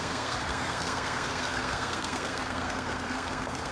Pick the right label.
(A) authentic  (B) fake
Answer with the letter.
B